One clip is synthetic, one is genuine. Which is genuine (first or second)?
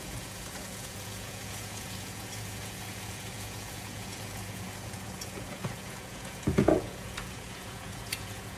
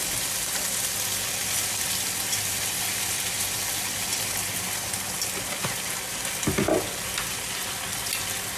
second